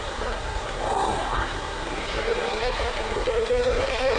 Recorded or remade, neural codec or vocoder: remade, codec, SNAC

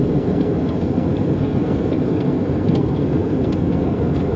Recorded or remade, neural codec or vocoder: remade, codec, SNAC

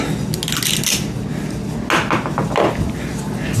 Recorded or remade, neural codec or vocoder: recorded